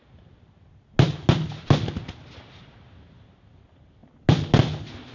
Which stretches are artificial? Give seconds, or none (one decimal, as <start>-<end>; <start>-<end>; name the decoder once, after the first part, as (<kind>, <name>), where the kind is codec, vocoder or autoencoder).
none